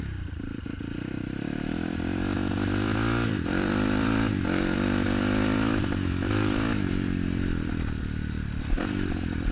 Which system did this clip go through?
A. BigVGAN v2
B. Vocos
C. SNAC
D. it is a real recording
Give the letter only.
A